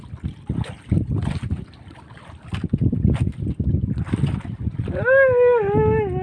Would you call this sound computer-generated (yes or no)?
no